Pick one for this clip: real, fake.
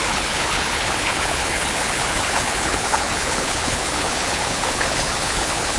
fake